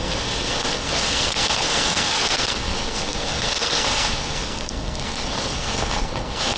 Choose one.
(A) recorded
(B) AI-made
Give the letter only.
B